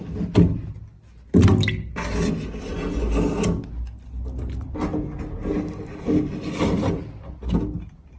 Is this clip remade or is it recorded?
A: recorded